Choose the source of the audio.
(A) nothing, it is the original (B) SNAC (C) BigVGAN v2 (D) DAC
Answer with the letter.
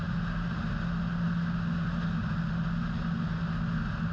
A